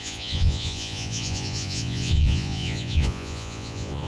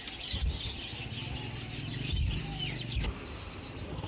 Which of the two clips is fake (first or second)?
first